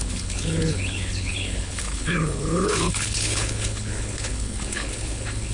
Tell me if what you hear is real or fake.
fake